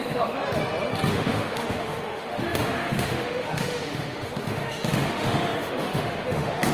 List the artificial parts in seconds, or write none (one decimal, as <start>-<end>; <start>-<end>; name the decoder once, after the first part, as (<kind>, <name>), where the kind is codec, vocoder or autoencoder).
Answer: 0.0-0.4 (autoencoder, DAC-VAE); 1.1-6.7